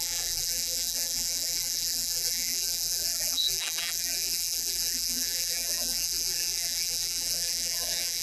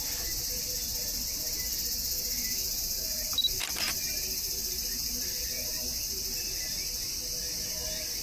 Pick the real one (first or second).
second